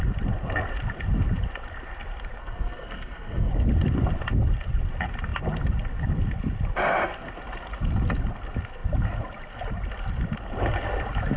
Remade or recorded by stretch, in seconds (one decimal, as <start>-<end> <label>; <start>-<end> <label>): 0.0-2.4 recorded; 2.4-3.5 remade; 3.5-11.4 recorded